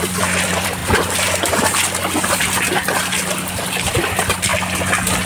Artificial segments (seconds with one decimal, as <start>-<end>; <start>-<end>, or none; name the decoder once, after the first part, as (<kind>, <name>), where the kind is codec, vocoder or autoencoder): 0.0-0.8 (vocoder, BigVGAN v2); 3.9-4.5